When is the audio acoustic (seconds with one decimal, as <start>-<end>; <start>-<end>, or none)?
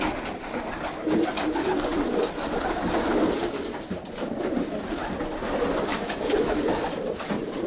0.0-5.9; 6.6-7.7